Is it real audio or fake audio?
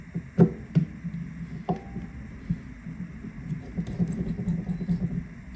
real